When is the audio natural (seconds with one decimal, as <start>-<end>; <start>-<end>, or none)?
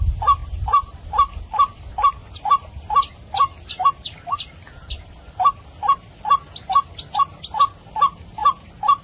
0.0-9.0